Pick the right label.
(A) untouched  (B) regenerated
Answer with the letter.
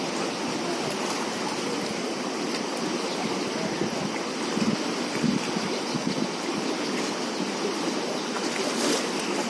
A